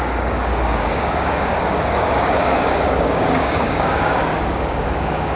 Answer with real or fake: fake